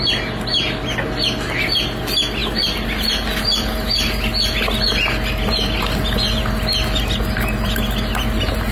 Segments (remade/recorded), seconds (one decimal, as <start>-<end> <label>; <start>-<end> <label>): 0.0-8.7 recorded

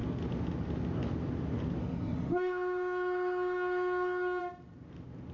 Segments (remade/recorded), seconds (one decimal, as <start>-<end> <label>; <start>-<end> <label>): 0.0-1.8 recorded; 1.8-4.4 remade; 4.4-5.3 recorded

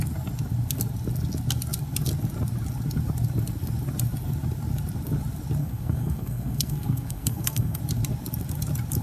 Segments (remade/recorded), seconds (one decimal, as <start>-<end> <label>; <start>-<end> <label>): 0.0-5.6 recorded; 5.6-7.8 remade; 7.8-9.0 recorded

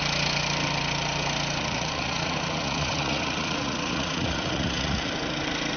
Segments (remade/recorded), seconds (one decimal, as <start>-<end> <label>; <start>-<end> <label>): 0.0-1.6 recorded; 1.6-5.1 remade; 5.1-5.8 recorded

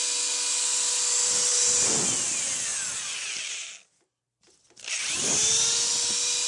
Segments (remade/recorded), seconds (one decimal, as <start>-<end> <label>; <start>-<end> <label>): 0.0-6.5 recorded

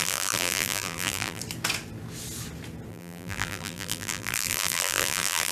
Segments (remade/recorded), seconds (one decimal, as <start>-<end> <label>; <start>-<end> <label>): 0.0-1.4 remade; 1.4-2.9 recorded; 2.9-5.5 remade